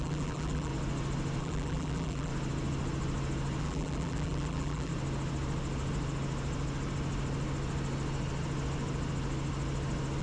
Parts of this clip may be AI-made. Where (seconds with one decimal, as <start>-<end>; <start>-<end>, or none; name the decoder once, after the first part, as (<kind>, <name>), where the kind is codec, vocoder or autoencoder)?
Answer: 0.0-0.7 (vocoder, BigVGAN v2); 1.4-2.3; 3.6-4.9

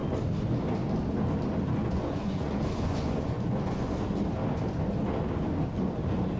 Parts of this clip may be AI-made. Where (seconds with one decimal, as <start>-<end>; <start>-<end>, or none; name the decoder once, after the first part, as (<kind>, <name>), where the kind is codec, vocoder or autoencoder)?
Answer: 1.8-3.9 (vocoder, Vocos)

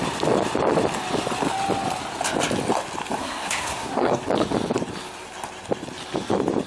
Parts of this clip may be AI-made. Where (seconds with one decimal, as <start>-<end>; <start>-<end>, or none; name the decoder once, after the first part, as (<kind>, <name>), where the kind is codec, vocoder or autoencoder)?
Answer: 3.2-4.2 (codec, SNAC)

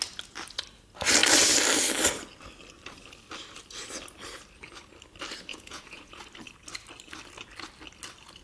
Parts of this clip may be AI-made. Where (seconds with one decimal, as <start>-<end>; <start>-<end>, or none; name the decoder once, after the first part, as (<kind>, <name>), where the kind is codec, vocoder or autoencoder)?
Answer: 5.5-6.2 (vocoder, Vocos)